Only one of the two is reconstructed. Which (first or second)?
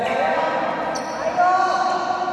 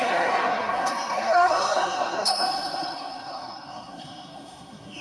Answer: second